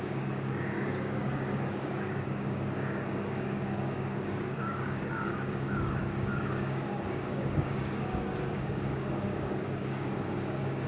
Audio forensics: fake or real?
fake